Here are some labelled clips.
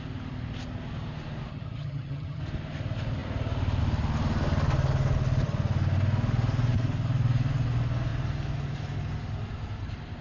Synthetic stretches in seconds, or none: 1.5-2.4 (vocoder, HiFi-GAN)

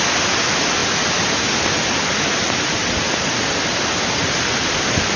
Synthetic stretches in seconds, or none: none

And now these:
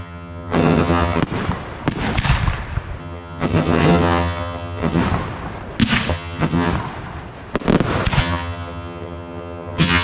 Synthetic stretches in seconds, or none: 0.0-1.2 (vocoder, HiFi-GAN); 3.0-5.0; 6.1-6.7; 8.2-10.0

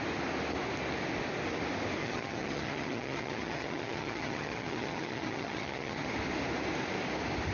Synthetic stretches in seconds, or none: 2.0-6.1 (vocoder, HiFi-GAN)

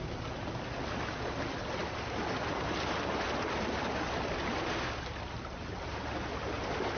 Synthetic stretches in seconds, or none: none

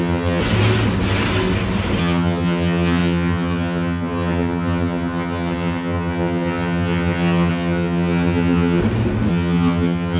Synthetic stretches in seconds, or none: 0.0-0.4 (vocoder, HiFi-GAN); 2.0-8.8; 9.3-10.2

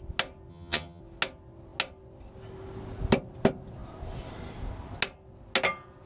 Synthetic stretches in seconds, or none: 0.5-1.0 (vocoder, HiFi-GAN)